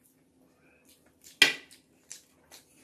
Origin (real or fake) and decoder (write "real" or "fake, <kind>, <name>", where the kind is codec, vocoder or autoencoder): real